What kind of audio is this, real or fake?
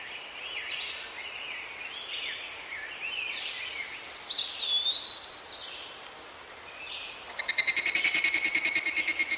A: real